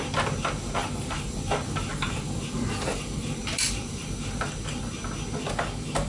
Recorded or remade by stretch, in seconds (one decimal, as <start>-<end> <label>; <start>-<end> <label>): 0.0-0.8 recorded; 0.8-4.5 remade; 4.5-6.1 recorded